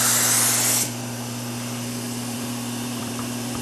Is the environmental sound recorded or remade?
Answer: remade